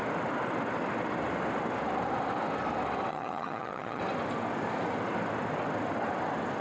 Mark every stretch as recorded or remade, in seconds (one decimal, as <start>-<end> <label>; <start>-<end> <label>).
0.0-3.1 recorded; 3.1-4.0 remade; 4.0-6.6 recorded